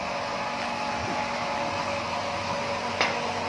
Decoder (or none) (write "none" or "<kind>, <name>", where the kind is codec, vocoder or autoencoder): none